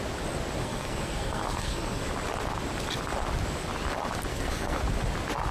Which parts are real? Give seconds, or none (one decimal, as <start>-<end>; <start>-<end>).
0.0-0.6; 2.1-4.3; 4.8-5.5